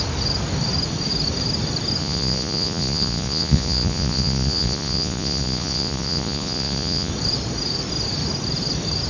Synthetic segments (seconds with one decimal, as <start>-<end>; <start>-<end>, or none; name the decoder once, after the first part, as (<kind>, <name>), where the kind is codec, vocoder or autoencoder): 2.0-7.1 (vocoder, Vocos)